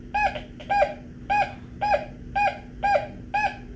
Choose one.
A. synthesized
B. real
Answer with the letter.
B